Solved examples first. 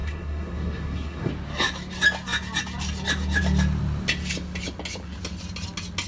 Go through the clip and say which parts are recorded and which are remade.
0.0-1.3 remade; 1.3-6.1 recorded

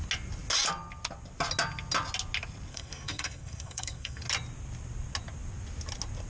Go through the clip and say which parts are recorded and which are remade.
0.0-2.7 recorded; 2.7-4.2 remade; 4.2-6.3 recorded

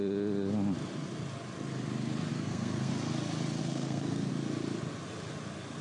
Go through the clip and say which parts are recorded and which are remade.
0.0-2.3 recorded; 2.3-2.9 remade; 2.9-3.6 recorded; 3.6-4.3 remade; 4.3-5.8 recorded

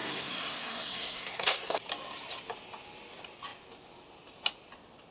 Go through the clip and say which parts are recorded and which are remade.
0.0-1.8 remade; 1.8-5.1 recorded